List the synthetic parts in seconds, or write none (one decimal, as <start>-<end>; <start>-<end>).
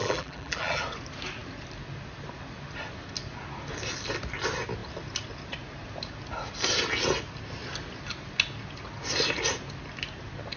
0.0-0.8